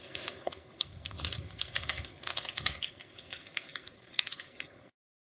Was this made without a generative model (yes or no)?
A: no